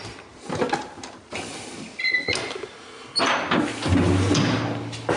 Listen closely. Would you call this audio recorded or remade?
recorded